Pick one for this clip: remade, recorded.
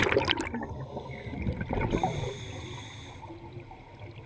recorded